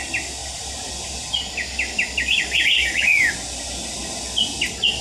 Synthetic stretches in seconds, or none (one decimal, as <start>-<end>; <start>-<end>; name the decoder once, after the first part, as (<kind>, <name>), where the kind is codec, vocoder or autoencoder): none